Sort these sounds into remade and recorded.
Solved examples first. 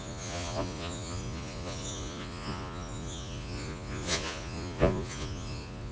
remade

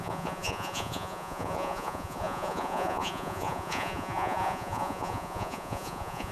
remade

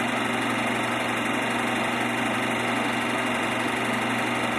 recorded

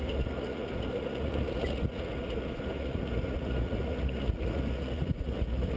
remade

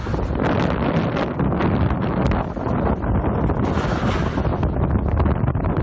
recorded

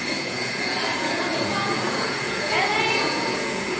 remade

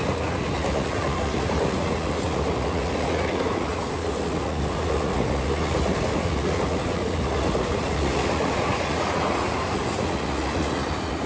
remade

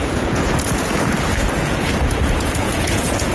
remade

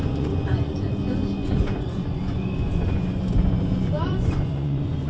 remade